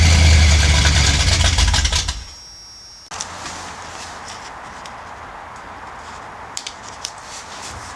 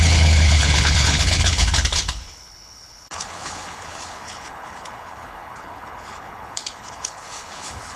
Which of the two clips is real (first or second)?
first